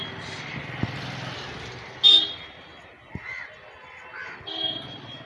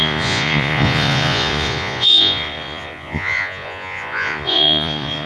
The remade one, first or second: second